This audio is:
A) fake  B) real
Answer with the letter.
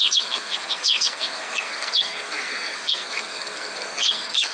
A